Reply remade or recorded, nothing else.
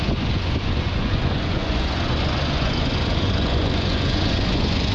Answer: remade